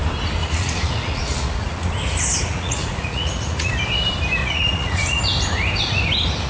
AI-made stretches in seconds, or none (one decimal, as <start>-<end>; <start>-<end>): 0.4-1.9; 2.5-3.7; 4.4-5.2